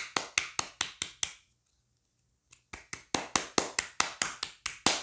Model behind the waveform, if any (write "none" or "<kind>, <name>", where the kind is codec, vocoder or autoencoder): none